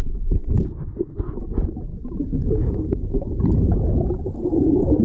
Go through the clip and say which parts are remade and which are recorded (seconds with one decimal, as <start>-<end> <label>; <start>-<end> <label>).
0.0-1.9 recorded; 1.9-5.0 remade